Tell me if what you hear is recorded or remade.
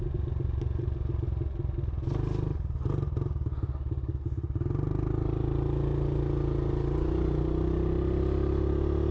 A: recorded